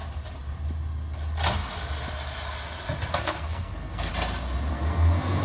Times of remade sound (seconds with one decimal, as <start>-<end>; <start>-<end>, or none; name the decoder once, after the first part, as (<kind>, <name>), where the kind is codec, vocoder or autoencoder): 3.1-4.1 (codec, SNAC); 4.7-5.4